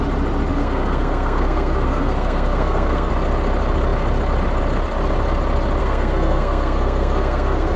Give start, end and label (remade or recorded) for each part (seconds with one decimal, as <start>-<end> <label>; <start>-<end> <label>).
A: 0.0-0.5 recorded; 0.5-3.1 remade; 3.1-5.8 recorded; 5.8-7.8 remade